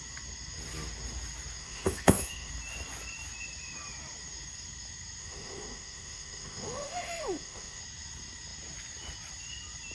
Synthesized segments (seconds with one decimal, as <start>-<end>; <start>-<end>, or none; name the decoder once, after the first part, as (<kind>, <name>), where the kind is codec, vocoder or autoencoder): 1.6-2.5 (autoencoder, DAC-VAE); 5.2-7.8